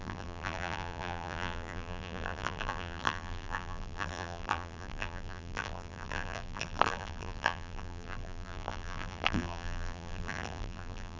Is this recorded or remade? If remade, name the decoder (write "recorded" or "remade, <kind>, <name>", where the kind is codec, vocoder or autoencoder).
remade, vocoder, BigVGAN v2